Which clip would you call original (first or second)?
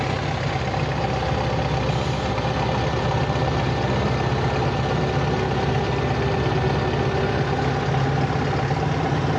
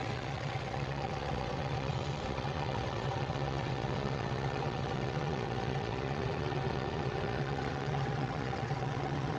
first